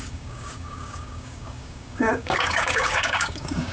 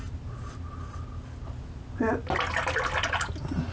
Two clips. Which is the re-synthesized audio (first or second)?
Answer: first